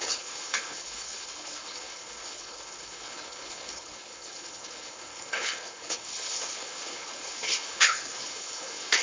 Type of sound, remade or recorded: remade